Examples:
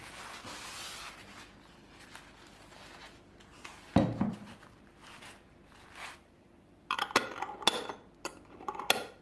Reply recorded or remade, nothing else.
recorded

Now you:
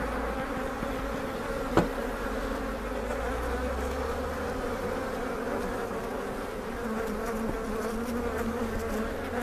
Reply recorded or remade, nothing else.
recorded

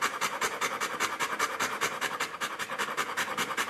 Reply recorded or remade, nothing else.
recorded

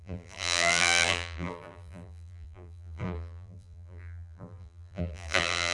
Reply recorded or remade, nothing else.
remade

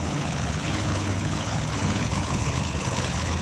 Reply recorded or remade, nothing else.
remade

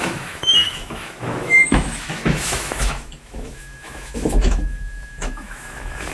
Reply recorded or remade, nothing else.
remade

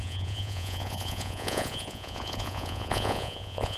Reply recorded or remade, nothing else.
remade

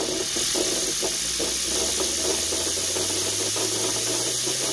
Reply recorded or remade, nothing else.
recorded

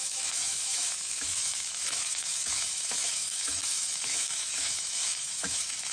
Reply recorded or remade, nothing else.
remade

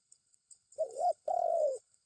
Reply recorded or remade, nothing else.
remade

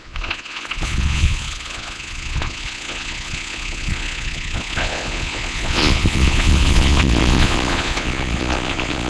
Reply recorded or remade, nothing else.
remade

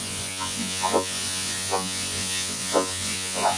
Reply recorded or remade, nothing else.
remade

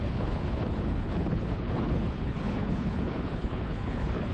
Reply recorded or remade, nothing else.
remade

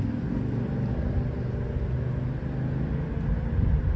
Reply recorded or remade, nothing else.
recorded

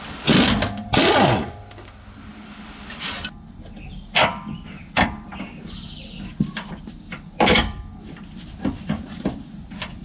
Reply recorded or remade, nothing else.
recorded